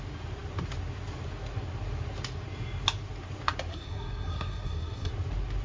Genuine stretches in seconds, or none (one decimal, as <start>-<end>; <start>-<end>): 0.0-3.7; 5.1-5.6